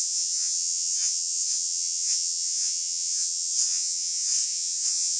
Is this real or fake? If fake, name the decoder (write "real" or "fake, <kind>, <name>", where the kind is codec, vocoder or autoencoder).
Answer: fake, vocoder, WaveNeXt